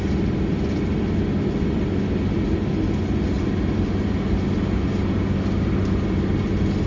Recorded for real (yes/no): yes